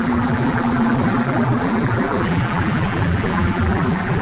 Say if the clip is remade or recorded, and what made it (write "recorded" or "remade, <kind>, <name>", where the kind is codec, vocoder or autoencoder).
remade, vocoder, BigVGAN v2